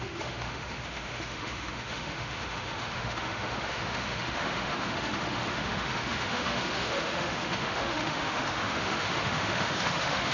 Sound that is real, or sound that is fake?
fake